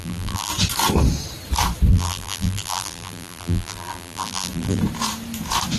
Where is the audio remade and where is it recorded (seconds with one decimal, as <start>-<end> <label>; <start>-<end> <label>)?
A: 0.0-0.5 remade; 0.5-1.9 recorded; 1.9-4.8 remade; 4.8-5.8 recorded